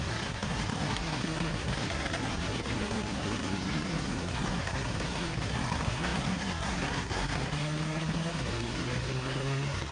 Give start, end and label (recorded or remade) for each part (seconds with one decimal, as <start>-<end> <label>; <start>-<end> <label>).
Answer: 0.0-9.9 remade